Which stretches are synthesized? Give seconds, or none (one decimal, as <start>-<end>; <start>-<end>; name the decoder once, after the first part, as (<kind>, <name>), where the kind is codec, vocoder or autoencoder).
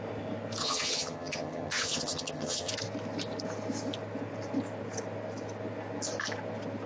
0.6-2.7 (vocoder, HiFi-GAN)